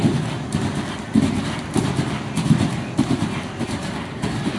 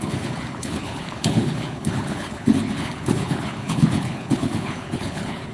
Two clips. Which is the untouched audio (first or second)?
first